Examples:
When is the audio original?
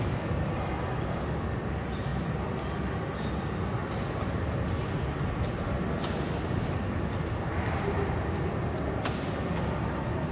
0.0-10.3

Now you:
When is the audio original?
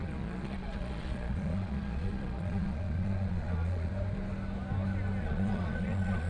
3.9-5.2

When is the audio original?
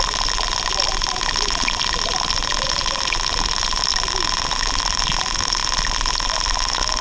0.0-7.0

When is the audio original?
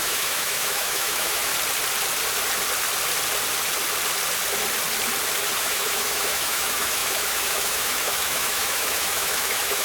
1.5-5.6